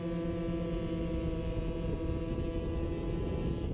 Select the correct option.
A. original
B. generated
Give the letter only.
A